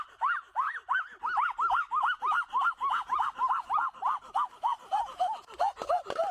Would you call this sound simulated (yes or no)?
yes